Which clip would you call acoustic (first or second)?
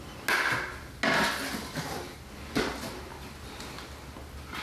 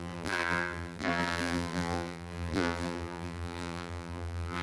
first